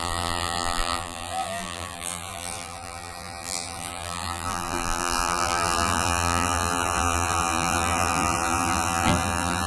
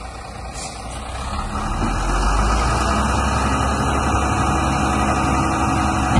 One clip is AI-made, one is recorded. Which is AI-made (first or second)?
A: first